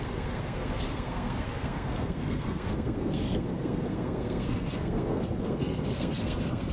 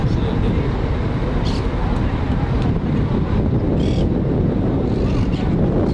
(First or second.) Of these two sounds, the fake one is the first